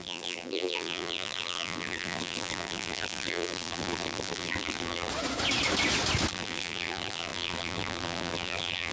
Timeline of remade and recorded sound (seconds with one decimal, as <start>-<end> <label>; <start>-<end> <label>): 0.0-5.1 remade; 5.1-6.3 recorded; 6.3-8.9 remade